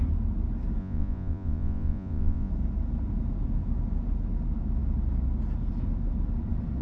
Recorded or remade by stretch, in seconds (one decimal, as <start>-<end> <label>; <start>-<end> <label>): 0.0-0.8 recorded; 0.8-2.5 remade; 2.5-6.8 recorded